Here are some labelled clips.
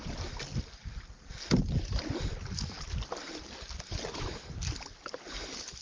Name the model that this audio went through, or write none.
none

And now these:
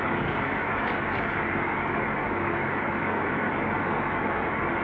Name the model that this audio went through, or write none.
codec, DAC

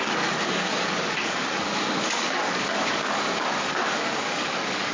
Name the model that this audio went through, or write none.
codec, DAC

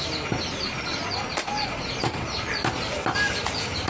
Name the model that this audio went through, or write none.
none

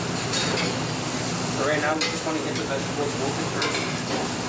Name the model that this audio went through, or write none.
none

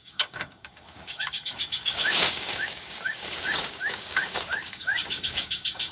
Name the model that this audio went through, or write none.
codec, DAC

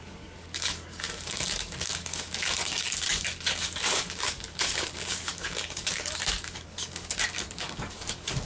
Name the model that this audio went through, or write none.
codec, DAC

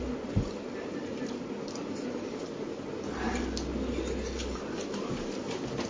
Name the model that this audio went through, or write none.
none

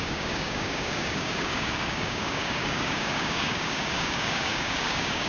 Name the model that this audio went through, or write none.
codec, DAC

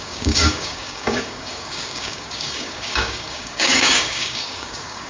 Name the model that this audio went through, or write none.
codec, DAC